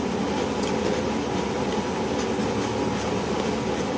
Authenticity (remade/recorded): recorded